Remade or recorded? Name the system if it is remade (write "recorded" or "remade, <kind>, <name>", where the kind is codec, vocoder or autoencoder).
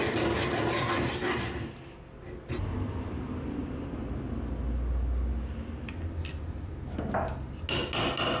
recorded